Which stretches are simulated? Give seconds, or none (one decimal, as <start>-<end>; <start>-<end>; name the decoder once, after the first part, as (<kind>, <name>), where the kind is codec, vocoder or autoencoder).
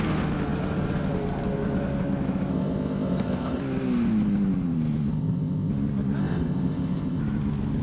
2.5-3.6 (codec, ZipCodec); 5.1-5.7; 6.2-7.2